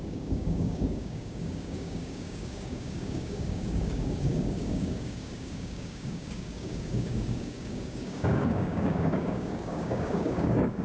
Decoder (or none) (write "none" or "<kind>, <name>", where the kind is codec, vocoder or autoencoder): codec, DAC